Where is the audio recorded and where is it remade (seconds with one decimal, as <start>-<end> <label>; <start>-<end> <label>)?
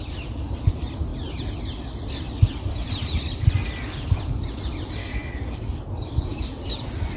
0.0-5.0 recorded; 5.0-6.6 remade; 6.6-7.2 recorded